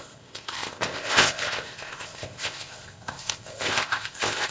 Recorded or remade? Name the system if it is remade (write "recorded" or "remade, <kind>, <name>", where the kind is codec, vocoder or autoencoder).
remade, codec, ZipCodec